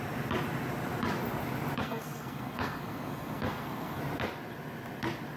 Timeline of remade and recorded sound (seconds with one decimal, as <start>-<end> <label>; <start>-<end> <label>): 0.0-1.8 recorded; 1.8-4.0 remade; 4.0-5.4 recorded